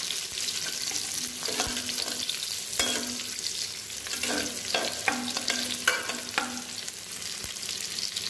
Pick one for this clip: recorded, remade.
recorded